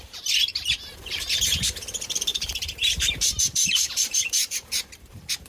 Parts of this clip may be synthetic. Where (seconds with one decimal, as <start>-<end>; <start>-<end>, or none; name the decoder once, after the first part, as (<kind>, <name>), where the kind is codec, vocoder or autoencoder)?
0.0-0.4 (vocoder, BigVGAN v2); 1.0-5.5